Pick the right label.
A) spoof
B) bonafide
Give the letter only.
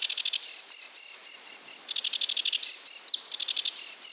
B